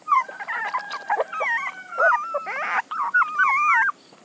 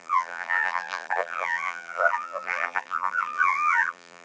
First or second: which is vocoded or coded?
second